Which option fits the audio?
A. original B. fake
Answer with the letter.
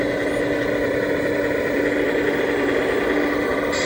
A